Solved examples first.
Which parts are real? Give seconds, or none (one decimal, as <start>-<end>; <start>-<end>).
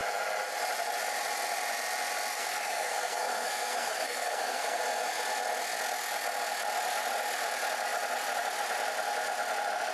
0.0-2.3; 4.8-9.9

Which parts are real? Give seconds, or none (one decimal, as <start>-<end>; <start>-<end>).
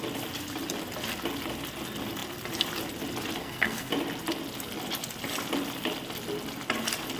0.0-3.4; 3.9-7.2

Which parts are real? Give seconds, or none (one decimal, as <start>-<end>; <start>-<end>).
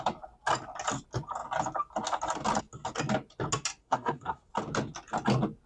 0.0-3.8; 4.5-5.7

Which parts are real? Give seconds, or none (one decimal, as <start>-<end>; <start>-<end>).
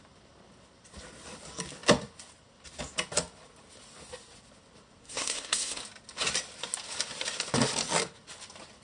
0.0-5.0; 5.8-8.8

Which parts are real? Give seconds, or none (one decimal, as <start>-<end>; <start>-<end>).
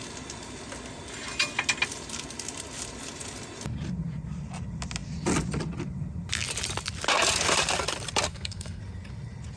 0.0-8.3; 8.8-9.6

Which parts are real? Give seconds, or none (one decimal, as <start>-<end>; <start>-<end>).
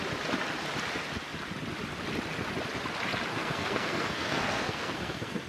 0.0-3.3